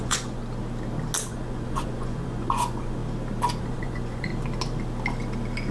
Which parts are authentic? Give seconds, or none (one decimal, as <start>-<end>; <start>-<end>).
0.4-1.3; 3.0-3.6; 4.3-5.7